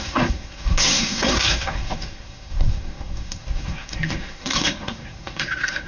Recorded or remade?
remade